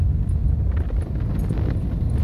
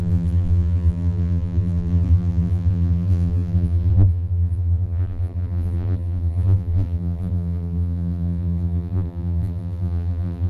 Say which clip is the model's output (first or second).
second